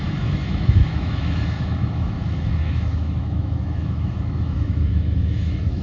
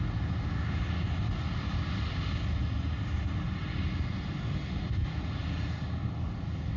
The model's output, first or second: first